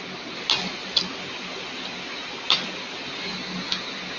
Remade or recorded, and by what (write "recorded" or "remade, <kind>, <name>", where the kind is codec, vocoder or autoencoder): recorded